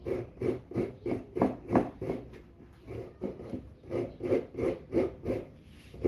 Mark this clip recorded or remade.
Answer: recorded